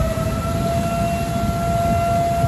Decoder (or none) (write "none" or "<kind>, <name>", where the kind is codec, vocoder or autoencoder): none